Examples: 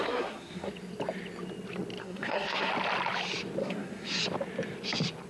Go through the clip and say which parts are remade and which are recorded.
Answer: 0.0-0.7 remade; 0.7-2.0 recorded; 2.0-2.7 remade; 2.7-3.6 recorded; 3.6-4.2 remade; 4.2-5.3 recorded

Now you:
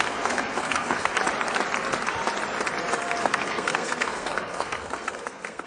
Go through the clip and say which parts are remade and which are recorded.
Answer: 0.0-1.1 remade; 1.1-3.2 recorded; 3.2-5.7 remade

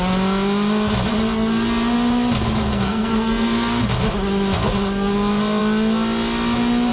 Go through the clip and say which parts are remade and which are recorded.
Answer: 0.0-2.7 recorded; 2.7-3.8 remade; 3.8-6.9 recorded

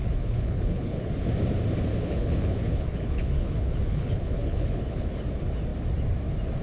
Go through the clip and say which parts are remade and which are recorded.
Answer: 0.0-1.1 remade; 1.1-1.9 recorded; 1.9-5.2 remade; 5.2-6.6 recorded

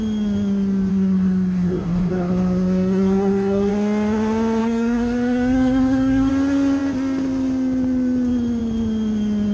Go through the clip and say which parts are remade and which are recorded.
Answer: 0.0-0.9 recorded; 0.9-3.7 remade; 3.7-4.6 recorded; 4.6-6.3 remade; 6.3-9.5 recorded

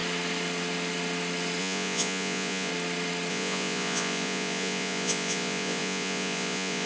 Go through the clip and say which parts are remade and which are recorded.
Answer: 0.0-1.6 recorded; 1.6-2.7 remade; 2.7-3.3 recorded; 3.3-6.9 remade